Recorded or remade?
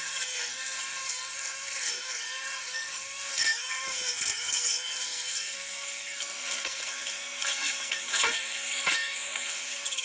remade